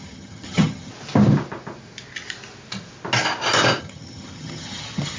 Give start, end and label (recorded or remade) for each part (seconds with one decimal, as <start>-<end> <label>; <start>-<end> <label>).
0.0-0.9 remade; 0.9-3.8 recorded; 3.8-5.2 remade